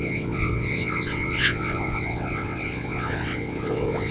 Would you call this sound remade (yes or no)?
yes